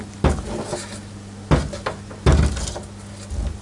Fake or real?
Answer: real